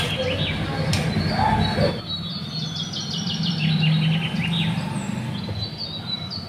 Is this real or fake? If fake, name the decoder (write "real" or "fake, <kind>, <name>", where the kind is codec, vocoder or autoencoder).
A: real